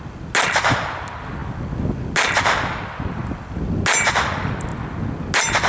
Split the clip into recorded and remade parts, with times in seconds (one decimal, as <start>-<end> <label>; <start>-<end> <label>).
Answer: 0.0-5.7 recorded